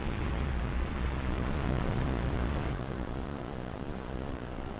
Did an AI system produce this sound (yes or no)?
yes